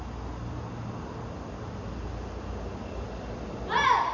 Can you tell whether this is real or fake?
real